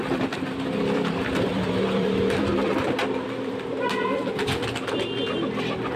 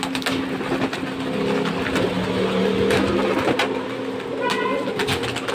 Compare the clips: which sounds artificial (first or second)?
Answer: first